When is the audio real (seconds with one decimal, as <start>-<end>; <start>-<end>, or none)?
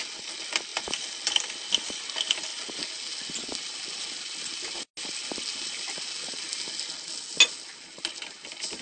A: 0.0-8.8